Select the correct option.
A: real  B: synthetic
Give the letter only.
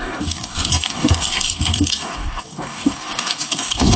B